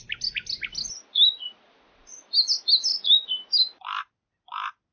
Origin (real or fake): real